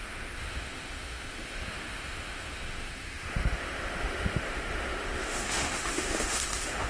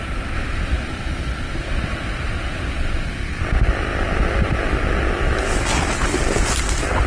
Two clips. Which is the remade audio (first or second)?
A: first